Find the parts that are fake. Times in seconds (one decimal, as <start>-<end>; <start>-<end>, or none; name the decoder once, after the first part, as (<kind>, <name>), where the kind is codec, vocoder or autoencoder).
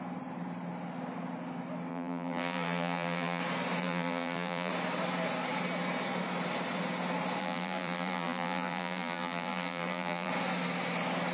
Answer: 1.9-3.4 (vocoder, BigVGAN v2); 3.8-4.7; 7.4-10.3